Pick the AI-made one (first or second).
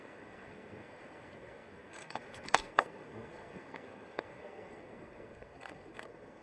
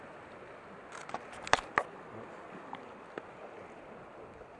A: first